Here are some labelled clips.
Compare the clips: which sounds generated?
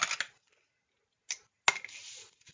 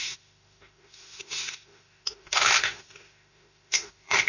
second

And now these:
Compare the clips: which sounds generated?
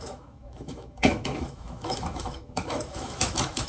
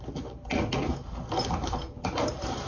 first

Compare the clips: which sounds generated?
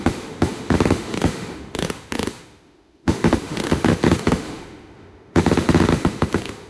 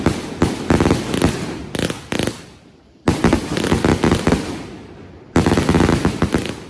first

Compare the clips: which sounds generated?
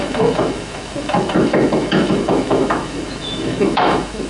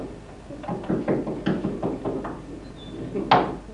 first